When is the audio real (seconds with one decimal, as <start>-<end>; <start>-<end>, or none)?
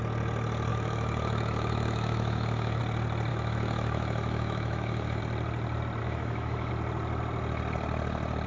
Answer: 0.0-0.7; 2.8-3.3; 5.2-6.0; 6.7-8.5